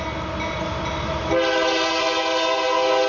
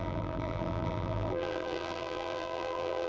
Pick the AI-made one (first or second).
second